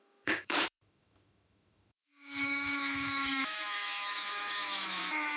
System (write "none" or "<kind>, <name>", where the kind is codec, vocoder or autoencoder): autoencoder, DAC-VAE